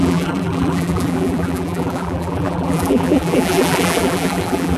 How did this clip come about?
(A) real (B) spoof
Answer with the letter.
B